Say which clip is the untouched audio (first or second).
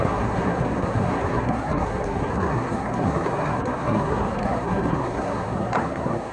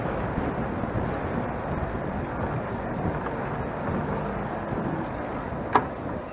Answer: second